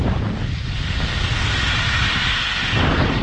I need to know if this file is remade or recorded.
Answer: recorded